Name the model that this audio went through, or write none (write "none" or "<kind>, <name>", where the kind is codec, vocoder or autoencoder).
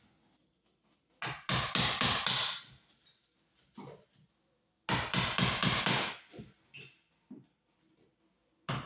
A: none